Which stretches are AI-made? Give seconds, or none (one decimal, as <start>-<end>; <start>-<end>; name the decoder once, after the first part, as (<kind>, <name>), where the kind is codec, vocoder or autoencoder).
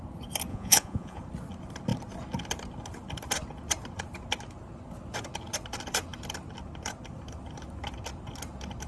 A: 0.5-1.2 (vocoder, Vocos)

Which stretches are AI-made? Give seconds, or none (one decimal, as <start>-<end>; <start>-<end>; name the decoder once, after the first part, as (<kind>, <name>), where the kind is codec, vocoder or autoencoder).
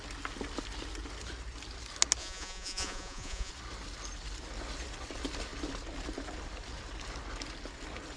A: 2.2-3.5 (vocoder, Vocos)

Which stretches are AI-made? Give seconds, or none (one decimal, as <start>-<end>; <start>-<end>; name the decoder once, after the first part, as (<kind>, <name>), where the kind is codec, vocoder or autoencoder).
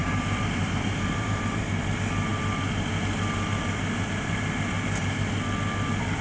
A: 0.0-1.6 (vocoder, BigVGAN v2)